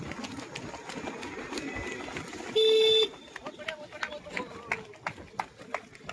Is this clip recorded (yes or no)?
yes